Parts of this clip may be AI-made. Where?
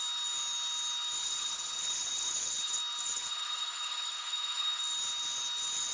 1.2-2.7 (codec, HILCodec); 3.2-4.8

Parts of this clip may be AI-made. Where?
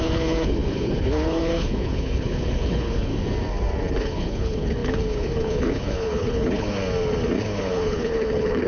0.0-3.1 (codec, HILCodec); 4.0-6.8; 7.4-8.7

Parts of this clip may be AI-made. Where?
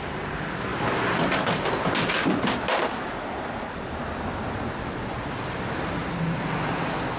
none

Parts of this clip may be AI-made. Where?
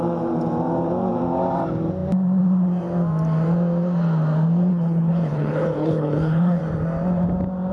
4.7-6.6 (codec, HILCodec)